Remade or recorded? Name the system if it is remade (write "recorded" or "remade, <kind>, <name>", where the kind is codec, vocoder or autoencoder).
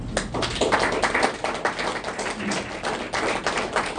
recorded